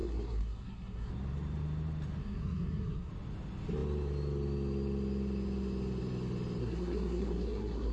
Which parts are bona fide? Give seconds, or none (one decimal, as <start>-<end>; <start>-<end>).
1.1-2.2; 3.1-6.6